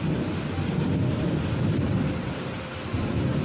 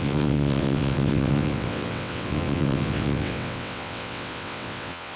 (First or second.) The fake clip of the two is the second